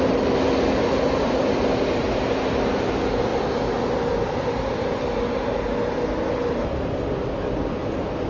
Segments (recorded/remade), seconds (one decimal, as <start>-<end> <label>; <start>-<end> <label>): 0.0-8.3 recorded